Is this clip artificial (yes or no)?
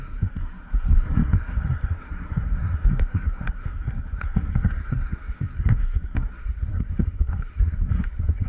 yes